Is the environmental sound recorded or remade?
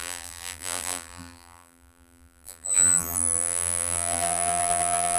remade